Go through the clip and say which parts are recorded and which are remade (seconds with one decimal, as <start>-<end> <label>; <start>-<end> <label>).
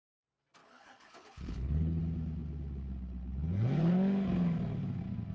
0.0-0.6 recorded; 0.6-2.0 remade; 2.0-5.3 recorded